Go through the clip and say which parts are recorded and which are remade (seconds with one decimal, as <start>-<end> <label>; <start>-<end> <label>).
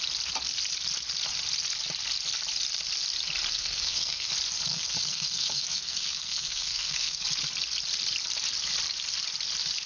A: 0.0-3.5 recorded; 3.5-4.3 remade; 4.3-4.7 recorded; 4.7-7.2 remade; 7.2-9.9 recorded